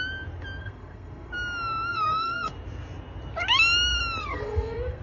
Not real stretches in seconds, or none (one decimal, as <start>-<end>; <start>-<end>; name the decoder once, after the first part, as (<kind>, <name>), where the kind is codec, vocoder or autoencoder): 0.6-1.3 (codec, SNAC); 1.9-2.5; 4.2-5.0

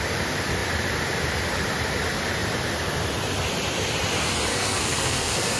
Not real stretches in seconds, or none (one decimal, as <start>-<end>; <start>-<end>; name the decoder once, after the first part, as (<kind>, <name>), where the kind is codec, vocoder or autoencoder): 4.5-5.6 (codec, SNAC)

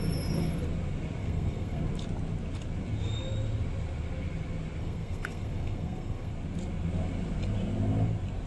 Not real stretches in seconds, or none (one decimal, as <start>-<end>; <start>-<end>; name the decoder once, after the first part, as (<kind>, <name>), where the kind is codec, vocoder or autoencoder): 1.2-1.8 (codec, SNAC); 4.8-6.3